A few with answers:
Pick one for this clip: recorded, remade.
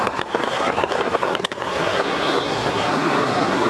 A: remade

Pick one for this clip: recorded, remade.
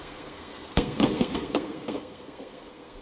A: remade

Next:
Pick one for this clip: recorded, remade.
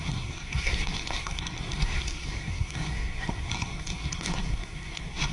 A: remade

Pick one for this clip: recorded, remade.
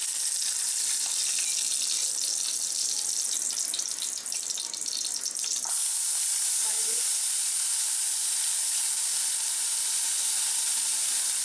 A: recorded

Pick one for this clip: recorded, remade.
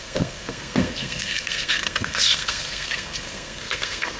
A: remade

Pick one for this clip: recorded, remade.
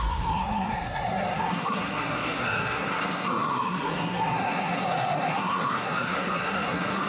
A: remade